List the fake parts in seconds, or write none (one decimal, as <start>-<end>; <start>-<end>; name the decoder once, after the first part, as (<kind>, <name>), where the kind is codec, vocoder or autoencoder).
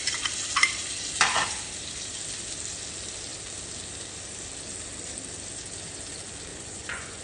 6.5-7.2 (vocoder, Vocos)